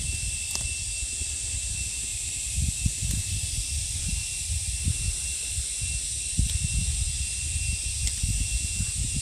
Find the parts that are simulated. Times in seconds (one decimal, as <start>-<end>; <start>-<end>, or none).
2.1-5.5